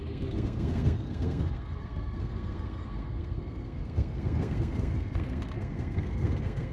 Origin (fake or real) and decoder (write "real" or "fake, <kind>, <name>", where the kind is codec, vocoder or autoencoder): fake, codec, SNAC